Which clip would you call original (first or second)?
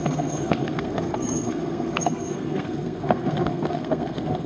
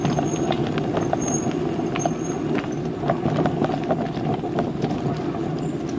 second